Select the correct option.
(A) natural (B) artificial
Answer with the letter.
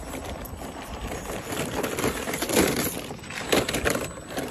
A